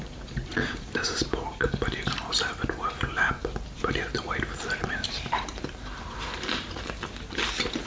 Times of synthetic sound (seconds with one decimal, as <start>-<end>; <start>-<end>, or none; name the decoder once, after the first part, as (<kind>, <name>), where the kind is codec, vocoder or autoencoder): 0.4-1.7 (vocoder, BigVGAN v2); 3.4-6.9